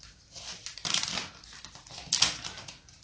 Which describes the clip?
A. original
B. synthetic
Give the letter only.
A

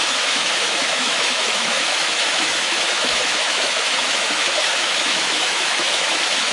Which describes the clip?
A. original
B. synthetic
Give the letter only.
B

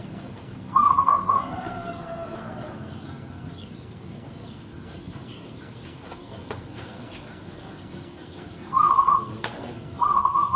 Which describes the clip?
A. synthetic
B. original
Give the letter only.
A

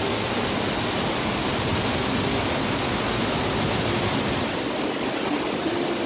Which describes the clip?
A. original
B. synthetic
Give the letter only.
A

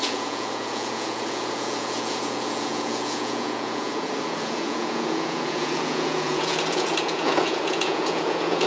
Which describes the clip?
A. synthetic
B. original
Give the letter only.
A